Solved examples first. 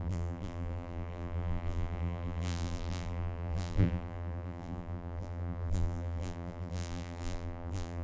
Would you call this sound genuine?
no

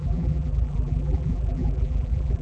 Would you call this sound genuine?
no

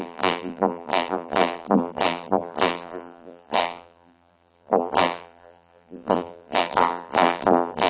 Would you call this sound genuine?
no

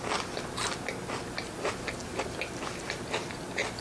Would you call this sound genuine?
yes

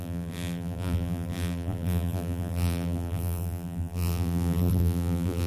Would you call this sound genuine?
no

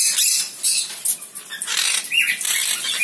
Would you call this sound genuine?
yes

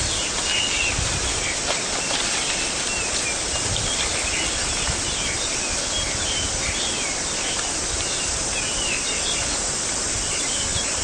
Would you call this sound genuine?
yes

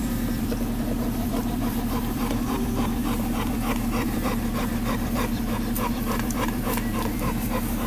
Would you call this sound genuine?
no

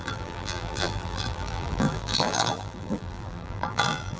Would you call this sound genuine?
no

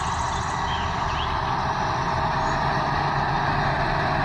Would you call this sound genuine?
no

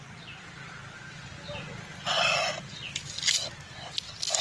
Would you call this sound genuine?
yes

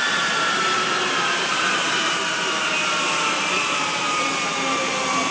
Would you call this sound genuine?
no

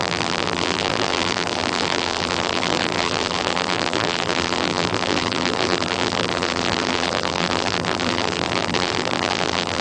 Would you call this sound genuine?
no